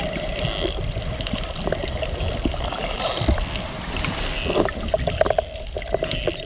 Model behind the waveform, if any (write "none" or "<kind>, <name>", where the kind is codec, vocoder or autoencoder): none